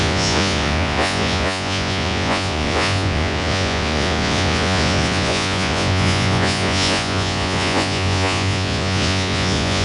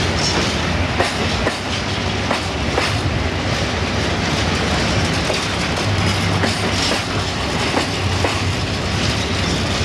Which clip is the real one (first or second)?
second